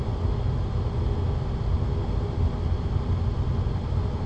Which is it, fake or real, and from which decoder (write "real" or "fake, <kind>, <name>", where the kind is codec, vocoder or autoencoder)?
real